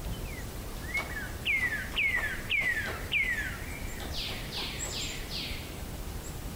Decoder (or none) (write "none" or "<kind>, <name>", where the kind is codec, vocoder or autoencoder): vocoder, BigVGAN v2